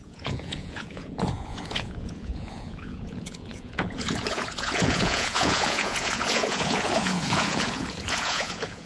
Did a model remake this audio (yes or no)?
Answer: yes